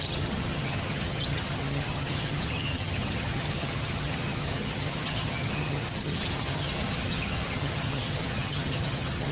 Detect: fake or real fake